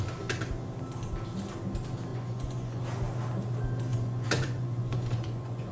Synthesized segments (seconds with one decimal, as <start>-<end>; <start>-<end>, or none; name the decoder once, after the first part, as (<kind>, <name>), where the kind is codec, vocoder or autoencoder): 2.1-2.8 (vocoder, Vocos); 3.9-5.7